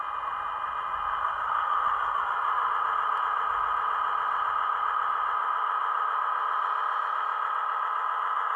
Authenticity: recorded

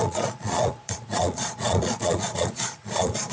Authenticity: remade